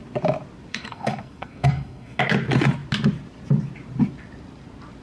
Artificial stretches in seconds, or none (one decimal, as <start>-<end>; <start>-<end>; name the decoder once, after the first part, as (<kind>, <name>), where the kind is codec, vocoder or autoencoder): 0.7-2.2 (codec, SNAC)